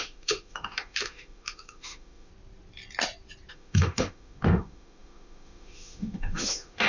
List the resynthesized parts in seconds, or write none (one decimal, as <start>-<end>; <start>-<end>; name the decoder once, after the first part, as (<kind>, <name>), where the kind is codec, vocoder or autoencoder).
0.0-2.3 (autoencoder, DAC-VAE); 3.5-6.9